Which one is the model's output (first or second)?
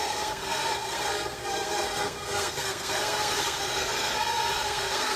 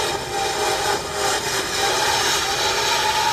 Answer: first